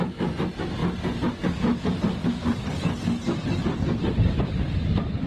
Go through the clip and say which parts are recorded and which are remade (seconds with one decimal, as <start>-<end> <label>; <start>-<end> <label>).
0.0-5.3 recorded